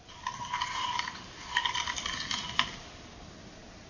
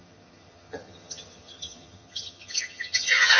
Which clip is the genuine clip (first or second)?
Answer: first